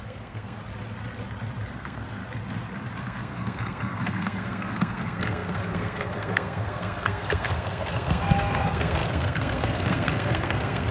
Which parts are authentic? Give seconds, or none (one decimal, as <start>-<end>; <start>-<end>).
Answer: 0.6-1.7; 2.2-3.0